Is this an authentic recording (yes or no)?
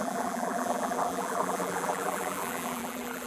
no